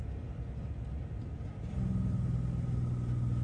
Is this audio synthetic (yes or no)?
no